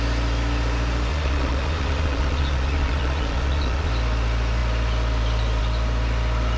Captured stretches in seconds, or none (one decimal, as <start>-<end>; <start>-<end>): 0.0-1.1; 3.9-6.6